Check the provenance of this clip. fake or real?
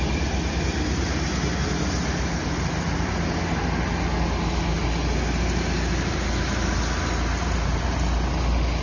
real